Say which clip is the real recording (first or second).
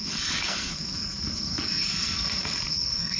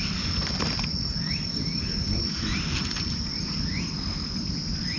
second